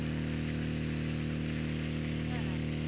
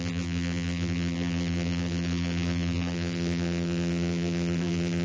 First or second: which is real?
first